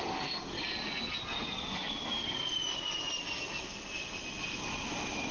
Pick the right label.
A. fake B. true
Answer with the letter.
B